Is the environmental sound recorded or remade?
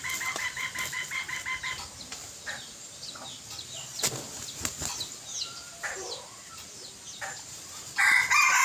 recorded